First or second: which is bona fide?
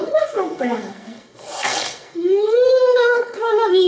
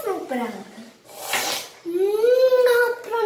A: second